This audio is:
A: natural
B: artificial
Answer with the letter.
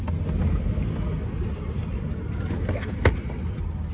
A